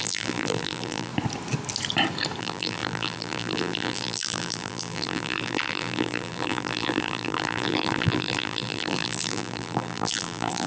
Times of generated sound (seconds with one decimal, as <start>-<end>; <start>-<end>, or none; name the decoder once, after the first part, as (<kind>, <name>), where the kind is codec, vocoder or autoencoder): 0.0-1.1 (vocoder, BigVGAN v2); 2.4-10.7

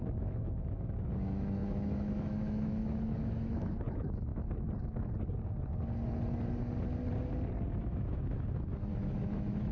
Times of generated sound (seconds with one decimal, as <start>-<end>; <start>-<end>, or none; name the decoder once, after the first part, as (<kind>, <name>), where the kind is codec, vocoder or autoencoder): 0.0-4.3 (autoencoder, DAC-VAE); 7.7-9.7

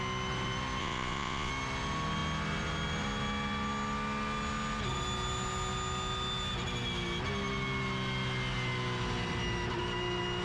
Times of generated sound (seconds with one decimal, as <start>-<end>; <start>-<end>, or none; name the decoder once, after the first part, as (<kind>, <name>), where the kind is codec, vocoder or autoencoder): 0.8-1.5 (vocoder, Vocos)